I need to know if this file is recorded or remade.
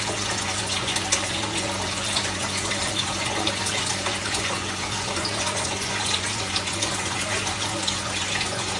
remade